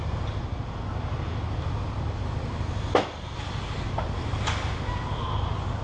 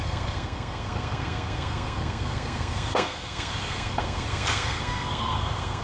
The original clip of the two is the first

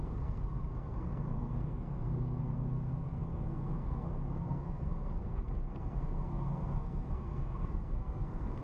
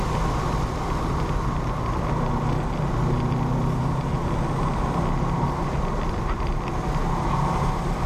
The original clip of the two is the second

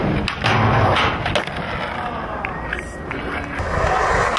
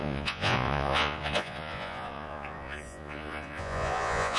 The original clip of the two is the first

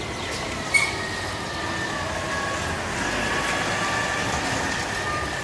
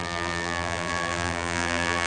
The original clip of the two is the first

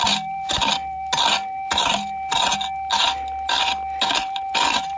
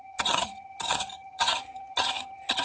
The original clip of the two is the first